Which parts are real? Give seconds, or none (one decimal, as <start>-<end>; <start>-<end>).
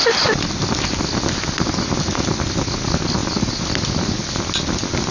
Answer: 0.0-5.1